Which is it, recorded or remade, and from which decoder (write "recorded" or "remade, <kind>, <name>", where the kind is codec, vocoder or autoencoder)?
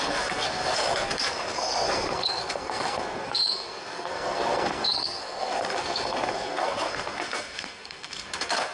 remade, codec, SNAC